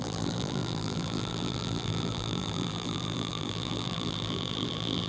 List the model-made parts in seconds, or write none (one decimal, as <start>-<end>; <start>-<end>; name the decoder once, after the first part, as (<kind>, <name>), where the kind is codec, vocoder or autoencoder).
0.0-5.1 (vocoder, BigVGAN v2)